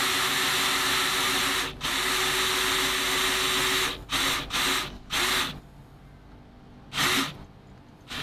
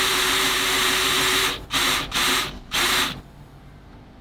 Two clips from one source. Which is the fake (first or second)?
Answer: second